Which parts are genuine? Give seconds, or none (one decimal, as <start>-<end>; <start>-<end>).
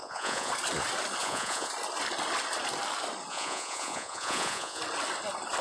0.5-1.2; 1.7-3.3; 4.8-5.6